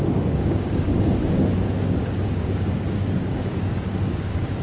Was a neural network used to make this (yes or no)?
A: yes